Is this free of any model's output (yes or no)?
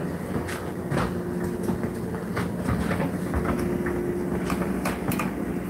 yes